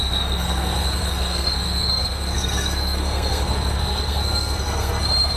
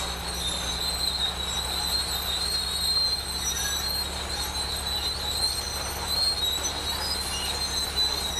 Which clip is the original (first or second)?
second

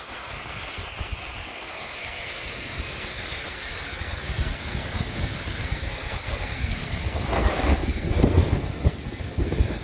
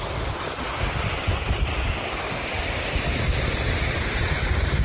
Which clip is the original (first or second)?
second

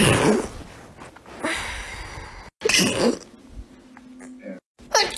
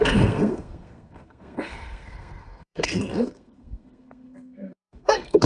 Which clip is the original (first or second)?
first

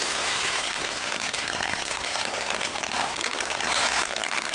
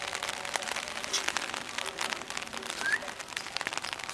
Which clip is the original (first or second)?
second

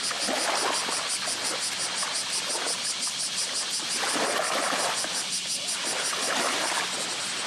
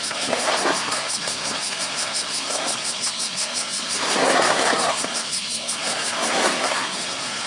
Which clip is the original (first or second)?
first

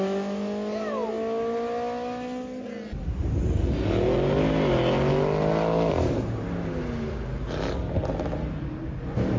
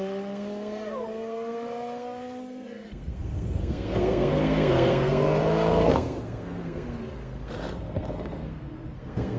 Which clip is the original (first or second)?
first